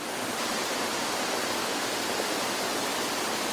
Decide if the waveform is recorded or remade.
recorded